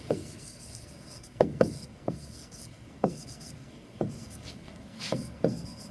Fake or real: fake